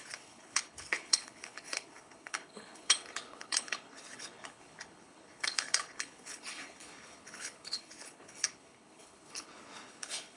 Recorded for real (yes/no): no